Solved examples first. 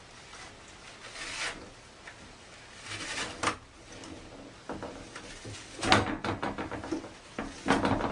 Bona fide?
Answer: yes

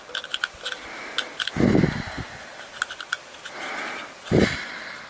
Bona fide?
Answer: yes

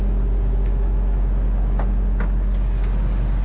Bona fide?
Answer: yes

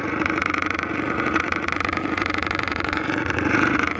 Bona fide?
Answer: no